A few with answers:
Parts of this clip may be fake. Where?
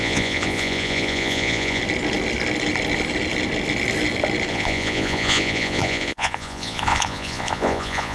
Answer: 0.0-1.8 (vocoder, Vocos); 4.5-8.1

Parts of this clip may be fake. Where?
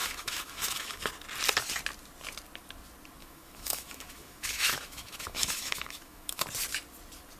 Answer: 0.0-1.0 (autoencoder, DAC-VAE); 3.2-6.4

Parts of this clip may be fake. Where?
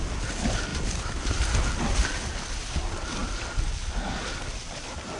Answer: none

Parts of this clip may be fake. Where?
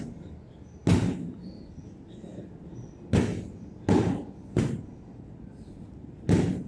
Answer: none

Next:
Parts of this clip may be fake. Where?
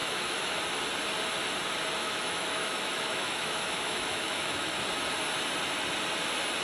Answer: 0.0-0.6 (autoencoder, DAC-VAE); 2.0-4.7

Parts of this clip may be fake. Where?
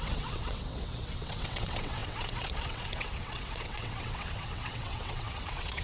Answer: 0.0-5.8 (vocoder, WaveNeXt)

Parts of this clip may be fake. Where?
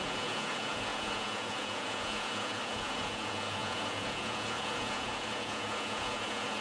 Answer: 0.0-6.6 (vocoder, Vocos)